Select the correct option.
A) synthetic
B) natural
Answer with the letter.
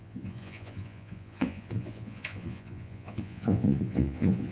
A